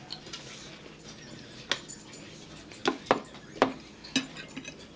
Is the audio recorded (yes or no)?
yes